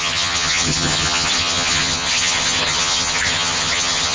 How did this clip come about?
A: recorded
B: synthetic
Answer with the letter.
B